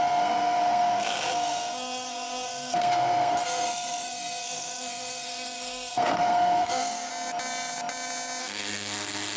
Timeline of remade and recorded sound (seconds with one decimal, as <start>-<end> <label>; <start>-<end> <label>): 0.0-7.1 remade; 7.1-8.4 recorded; 8.4-9.4 remade